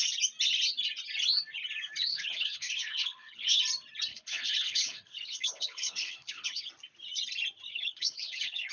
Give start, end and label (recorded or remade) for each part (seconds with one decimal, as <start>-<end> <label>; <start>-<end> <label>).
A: 0.0-2.1 recorded; 2.1-3.6 remade; 3.6-4.1 recorded; 4.1-6.7 remade; 6.7-7.7 recorded; 7.7-8.7 remade